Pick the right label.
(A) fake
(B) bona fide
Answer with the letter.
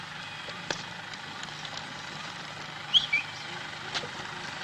B